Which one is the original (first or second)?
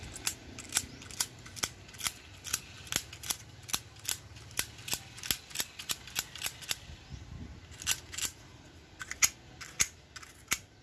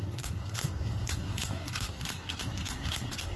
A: first